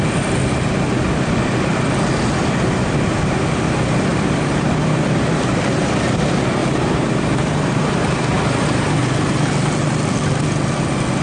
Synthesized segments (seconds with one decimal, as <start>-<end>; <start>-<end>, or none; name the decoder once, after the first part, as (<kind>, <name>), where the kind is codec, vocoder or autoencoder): 4.1-4.7 (vocoder, BigVGAN v2); 6.6-8.4